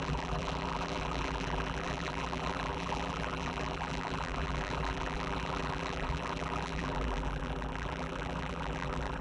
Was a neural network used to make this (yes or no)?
yes